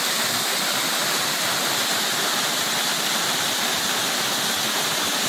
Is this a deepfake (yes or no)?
no